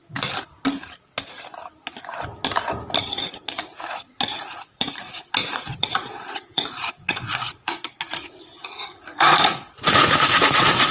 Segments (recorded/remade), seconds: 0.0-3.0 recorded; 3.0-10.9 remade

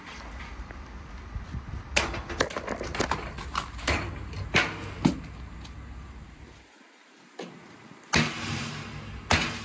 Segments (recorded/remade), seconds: 0.0-6.2 recorded; 6.2-7.5 remade; 7.5-9.6 recorded

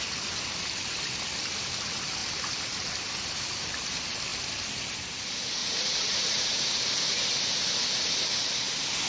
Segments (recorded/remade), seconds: 0.0-5.6 recorded; 5.6-6.8 remade; 6.8-9.1 recorded

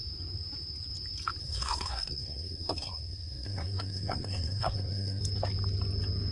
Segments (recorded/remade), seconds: 0.0-1.4 recorded; 1.4-5.2 remade; 5.2-6.3 recorded

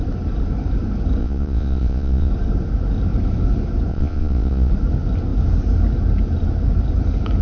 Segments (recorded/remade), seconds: 0.0-1.2 recorded; 1.2-2.3 remade; 2.3-3.9 recorded; 3.9-4.7 remade; 4.7-7.4 recorded

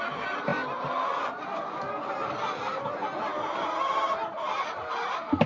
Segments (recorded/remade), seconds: 0.0-5.5 recorded